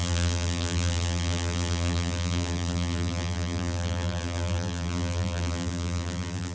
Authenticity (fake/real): fake